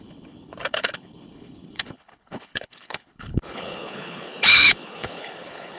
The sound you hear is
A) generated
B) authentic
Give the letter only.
A